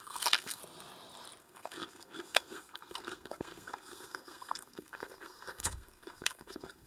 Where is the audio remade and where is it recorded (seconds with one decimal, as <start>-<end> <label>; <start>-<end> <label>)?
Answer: 0.0-0.6 remade; 0.6-1.4 recorded; 1.4-6.9 remade